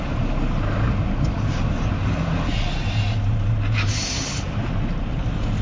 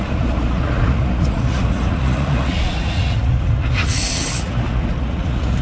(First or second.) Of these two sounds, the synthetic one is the second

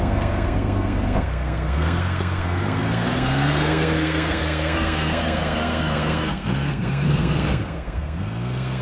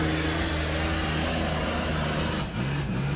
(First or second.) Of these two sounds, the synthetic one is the first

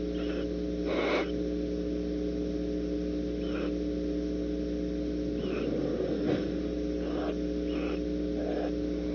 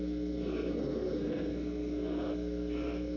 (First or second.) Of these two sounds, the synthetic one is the second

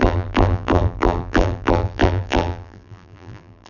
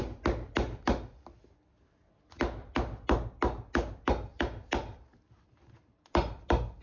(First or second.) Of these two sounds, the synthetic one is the first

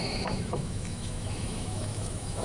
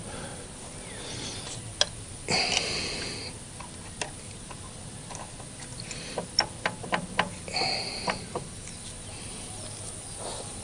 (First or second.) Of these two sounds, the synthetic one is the first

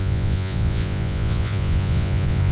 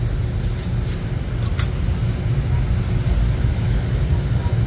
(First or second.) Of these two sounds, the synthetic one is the first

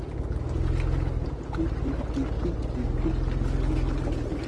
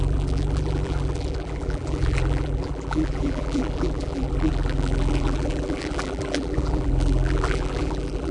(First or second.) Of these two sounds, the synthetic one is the second